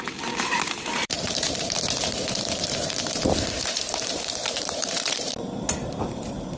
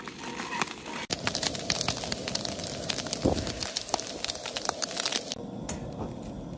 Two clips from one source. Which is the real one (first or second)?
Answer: second